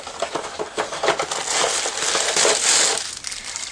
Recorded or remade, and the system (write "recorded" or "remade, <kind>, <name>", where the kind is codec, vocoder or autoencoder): recorded